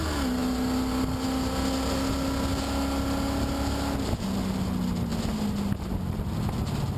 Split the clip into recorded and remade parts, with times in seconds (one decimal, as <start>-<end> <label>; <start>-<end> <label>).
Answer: 0.0-7.0 recorded